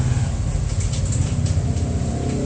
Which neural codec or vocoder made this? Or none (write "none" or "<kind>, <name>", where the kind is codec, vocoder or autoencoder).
none